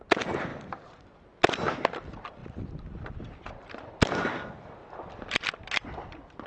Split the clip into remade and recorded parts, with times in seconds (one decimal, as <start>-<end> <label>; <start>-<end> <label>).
0.0-2.4 recorded; 2.4-3.9 remade; 3.9-4.8 recorded; 4.8-5.6 remade; 5.6-6.5 recorded